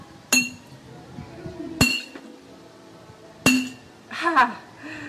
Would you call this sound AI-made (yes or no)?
no